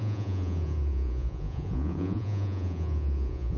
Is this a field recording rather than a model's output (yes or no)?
no